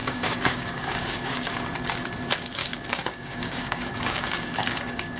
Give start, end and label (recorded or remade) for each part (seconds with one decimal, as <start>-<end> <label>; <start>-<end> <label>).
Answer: 0.0-1.5 remade; 1.5-2.6 recorded; 2.6-5.2 remade